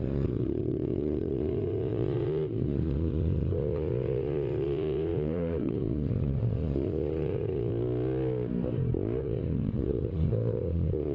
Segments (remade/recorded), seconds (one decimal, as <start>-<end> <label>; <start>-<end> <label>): 0.0-7.7 remade; 7.7-9.2 recorded; 9.2-11.1 remade